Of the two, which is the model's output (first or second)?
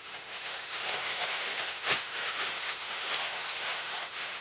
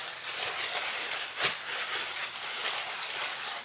first